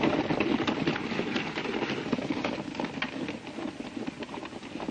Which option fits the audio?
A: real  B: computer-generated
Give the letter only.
A